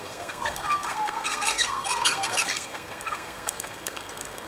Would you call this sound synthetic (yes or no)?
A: yes